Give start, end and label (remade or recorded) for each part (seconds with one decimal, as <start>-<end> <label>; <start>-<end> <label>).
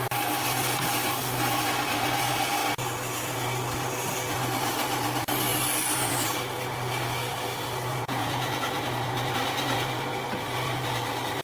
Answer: 0.0-7.9 recorded; 7.9-8.8 remade; 8.8-11.4 recorded